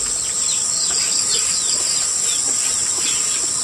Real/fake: real